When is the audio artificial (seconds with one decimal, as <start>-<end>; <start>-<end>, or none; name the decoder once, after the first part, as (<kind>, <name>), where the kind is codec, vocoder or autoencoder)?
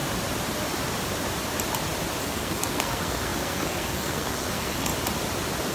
2.2-4.9 (codec, SNAC)